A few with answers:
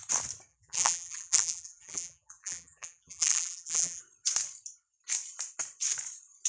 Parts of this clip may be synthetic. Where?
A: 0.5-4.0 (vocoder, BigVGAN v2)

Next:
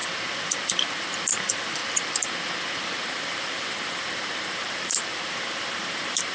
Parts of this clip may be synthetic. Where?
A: 0.6-1.8 (vocoder, BigVGAN v2); 3.0-6.3